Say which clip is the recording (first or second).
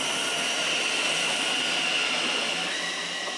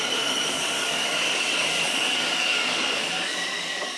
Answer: first